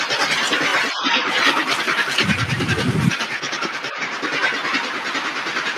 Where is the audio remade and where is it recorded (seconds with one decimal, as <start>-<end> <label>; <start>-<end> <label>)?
0.0-0.7 recorded; 0.7-3.9 remade; 3.9-5.8 recorded